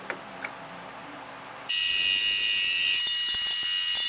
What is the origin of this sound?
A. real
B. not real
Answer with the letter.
A